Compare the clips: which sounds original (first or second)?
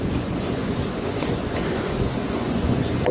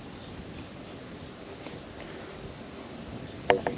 second